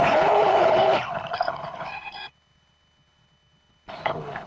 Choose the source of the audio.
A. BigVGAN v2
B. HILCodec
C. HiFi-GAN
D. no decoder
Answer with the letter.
B